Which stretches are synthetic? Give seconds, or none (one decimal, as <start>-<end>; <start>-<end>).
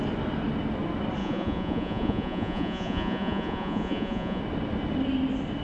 1.2-4.4